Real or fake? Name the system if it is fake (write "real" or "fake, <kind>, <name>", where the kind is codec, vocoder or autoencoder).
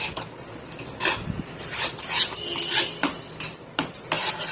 real